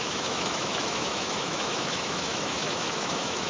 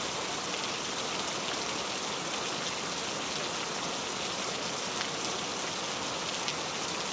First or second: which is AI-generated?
first